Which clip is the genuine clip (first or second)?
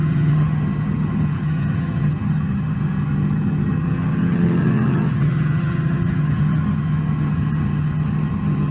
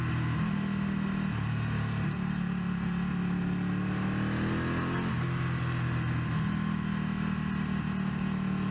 second